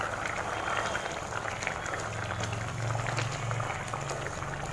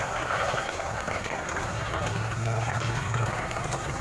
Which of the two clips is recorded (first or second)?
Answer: first